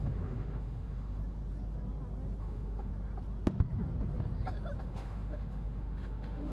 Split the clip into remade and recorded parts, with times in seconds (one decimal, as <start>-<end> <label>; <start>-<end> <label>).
0.0-1.2 remade; 1.2-2.4 recorded; 2.4-2.9 remade; 2.9-4.8 recorded; 4.8-6.5 remade